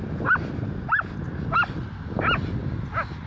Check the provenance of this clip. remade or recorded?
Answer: recorded